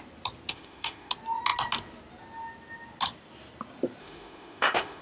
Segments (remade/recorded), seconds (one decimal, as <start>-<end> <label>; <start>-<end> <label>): 0.0-0.5 recorded; 0.5-1.1 remade; 1.1-4.0 recorded; 4.0-5.0 remade